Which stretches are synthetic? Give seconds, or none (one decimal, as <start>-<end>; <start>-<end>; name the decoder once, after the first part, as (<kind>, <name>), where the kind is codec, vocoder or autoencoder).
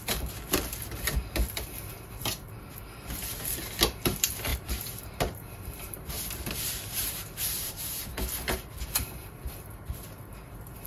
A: 4.5-8.0 (vocoder, BigVGAN v2)